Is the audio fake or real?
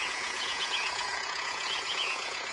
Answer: fake